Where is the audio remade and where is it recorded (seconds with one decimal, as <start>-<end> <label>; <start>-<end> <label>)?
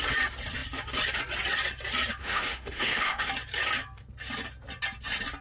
0.0-2.2 recorded; 2.2-3.3 remade; 3.3-5.4 recorded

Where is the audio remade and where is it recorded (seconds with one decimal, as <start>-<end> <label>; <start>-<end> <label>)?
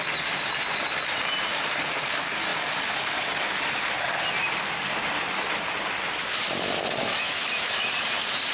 0.0-7.0 recorded; 7.0-7.9 remade; 7.9-8.5 recorded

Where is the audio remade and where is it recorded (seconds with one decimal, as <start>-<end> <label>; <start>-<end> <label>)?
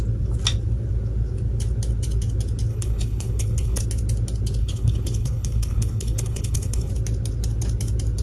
0.0-2.7 recorded; 2.7-3.8 remade; 3.8-4.6 recorded; 4.6-6.9 remade; 6.9-8.2 recorded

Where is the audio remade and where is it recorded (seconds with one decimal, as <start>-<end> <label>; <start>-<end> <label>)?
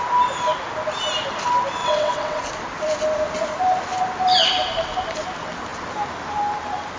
0.0-1.8 recorded; 1.8-2.4 remade; 2.4-7.0 recorded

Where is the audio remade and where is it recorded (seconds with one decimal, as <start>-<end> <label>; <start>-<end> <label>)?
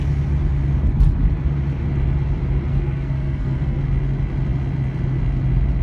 0.0-2.7 recorded; 2.7-3.8 remade; 3.8-5.8 recorded